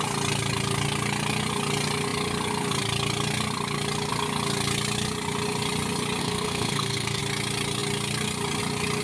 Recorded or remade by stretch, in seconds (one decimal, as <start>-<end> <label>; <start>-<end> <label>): 0.0-6.2 recorded; 6.2-7.2 remade; 7.2-9.0 recorded